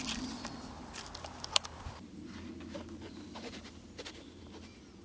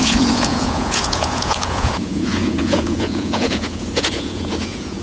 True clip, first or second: first